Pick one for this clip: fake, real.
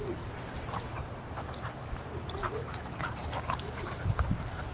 fake